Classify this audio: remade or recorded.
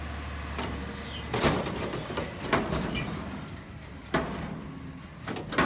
recorded